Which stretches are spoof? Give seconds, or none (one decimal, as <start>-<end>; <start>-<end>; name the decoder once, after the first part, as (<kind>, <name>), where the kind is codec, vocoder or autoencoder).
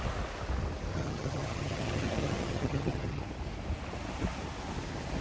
0.9-3.2 (vocoder, HiFi-GAN)